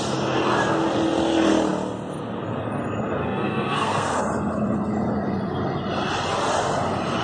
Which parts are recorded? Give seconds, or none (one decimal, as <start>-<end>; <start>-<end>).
0.0-3.2; 4.2-7.2